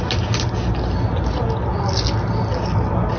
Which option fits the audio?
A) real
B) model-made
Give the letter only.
A